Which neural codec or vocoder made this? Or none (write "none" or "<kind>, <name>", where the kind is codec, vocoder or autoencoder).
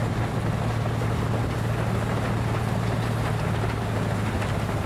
none